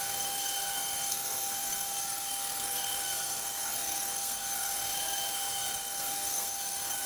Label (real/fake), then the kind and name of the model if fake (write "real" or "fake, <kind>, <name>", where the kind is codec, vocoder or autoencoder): fake, codec, SNAC